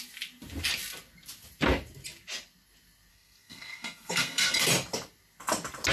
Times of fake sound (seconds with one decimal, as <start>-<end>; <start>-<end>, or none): 3.1-4.6